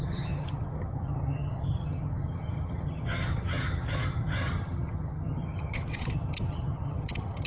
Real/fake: fake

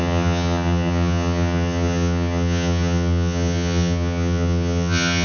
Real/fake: fake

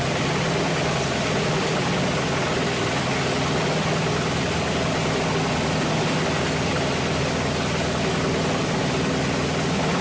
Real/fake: real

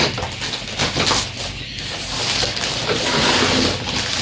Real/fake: real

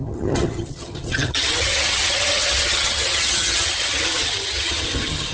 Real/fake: fake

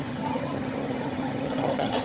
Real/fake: fake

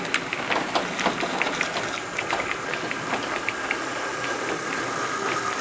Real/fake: real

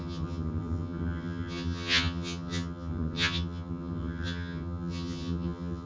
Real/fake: fake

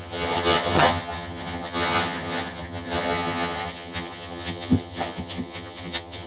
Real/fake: fake